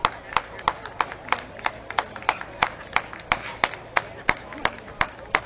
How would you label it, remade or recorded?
recorded